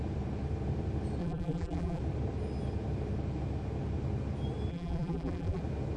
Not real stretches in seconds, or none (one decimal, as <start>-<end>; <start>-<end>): 1.2-2.0; 4.7-5.6